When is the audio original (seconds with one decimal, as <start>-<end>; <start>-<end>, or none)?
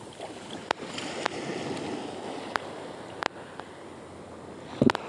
0.0-5.1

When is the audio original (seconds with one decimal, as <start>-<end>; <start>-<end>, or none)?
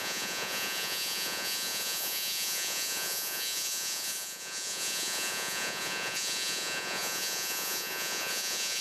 none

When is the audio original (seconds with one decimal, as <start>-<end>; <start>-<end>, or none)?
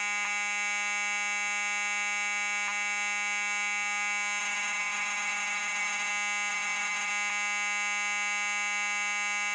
0.0-4.4; 6.1-6.5; 7.1-9.5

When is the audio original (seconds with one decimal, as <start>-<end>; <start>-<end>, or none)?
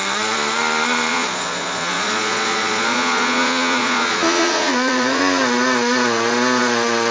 0.0-1.1; 5.2-7.1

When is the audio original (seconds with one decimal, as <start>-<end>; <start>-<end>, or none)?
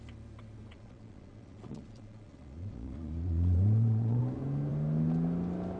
0.0-0.7; 4.2-5.8